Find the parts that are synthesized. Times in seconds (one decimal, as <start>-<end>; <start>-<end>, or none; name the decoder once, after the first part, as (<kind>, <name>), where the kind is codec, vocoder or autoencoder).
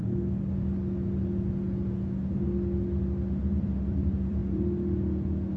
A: 3.4-4.4 (vocoder, BigVGAN v2)